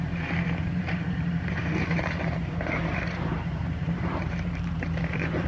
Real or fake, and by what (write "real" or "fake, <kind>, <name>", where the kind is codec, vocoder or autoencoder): fake, vocoder, BigVGAN v2